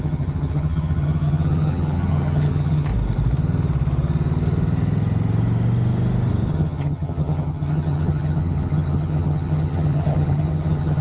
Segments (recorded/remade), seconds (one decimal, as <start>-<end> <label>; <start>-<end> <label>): 0.0-2.9 remade; 2.9-6.5 recorded; 6.5-11.0 remade